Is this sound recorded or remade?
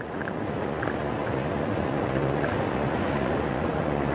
remade